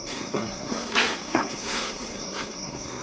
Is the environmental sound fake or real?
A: fake